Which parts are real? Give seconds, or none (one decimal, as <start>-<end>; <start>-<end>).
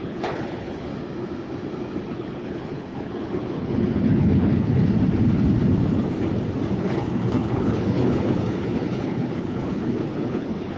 0.9-2.1; 4.9-6.8